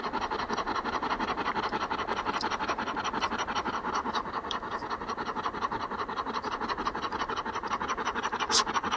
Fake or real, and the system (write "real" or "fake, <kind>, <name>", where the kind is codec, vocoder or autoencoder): real